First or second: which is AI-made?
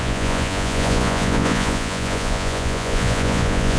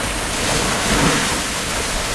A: first